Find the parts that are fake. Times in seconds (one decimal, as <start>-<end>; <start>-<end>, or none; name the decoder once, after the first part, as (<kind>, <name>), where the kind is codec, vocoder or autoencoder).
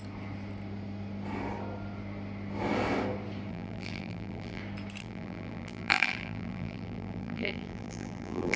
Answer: 3.5-4.6 (vocoder, BigVGAN v2); 5.0-8.6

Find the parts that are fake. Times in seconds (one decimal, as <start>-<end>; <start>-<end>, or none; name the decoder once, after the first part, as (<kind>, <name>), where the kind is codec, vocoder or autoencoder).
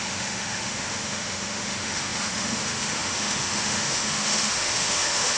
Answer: 0.0-5.4 (autoencoder, DAC-VAE)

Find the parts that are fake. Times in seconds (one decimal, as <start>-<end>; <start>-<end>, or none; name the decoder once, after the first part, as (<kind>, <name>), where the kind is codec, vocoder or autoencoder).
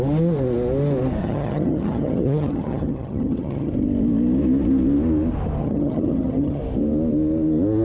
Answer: 1.2-3.7 (vocoder, HiFi-GAN); 5.6-6.6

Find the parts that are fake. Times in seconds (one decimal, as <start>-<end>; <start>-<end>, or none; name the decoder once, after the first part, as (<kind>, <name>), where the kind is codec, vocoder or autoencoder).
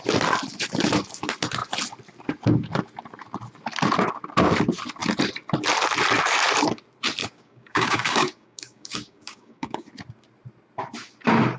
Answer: 7.2-9.9 (codec, DAC)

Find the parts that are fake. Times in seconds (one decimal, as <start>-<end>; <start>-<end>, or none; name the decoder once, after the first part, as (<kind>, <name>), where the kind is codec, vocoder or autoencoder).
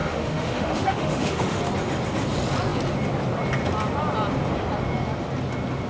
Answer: 0.0-1.6 (autoencoder, DAC-VAE)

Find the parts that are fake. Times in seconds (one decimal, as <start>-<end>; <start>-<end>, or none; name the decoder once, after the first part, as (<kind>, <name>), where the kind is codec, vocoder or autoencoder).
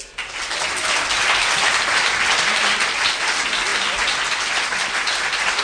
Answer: none